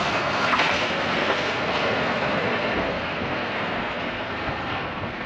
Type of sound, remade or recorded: remade